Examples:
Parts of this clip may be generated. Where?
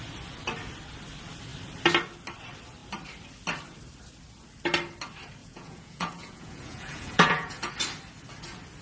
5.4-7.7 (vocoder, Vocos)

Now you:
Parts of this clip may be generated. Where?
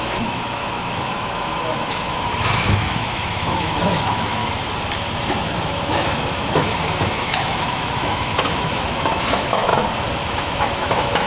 0.0-4.4 (autoencoder, DAC-VAE); 5.2-9.7; 10.3-11.3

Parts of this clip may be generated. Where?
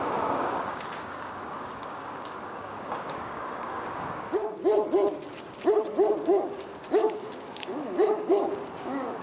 0.0-4.7 (codec, DAC); 6.1-9.2